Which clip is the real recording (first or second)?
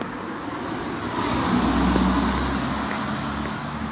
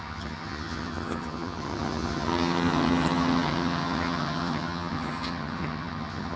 first